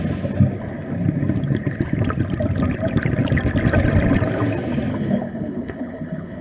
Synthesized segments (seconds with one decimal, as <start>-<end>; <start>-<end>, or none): 4.9-6.4